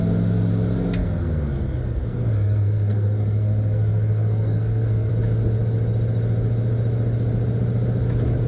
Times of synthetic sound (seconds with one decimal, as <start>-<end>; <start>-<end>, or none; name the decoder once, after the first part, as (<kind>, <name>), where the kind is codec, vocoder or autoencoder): 1.0-5.1 (codec, SNAC)